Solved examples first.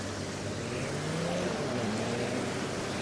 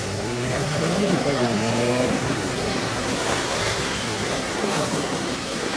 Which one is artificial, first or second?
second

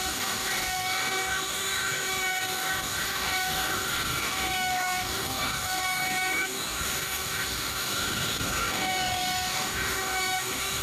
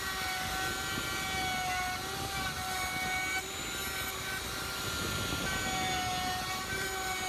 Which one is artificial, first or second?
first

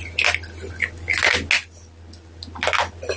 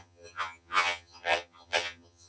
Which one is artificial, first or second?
second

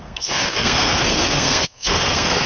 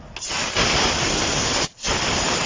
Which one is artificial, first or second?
first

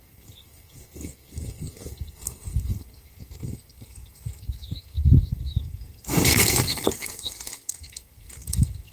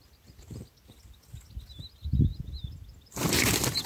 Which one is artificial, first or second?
first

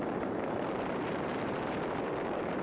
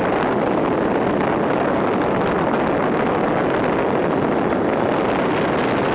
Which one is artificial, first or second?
first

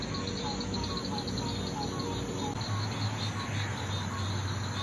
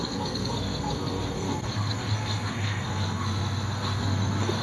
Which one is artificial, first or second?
second